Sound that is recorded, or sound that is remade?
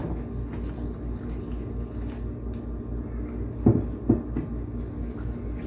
recorded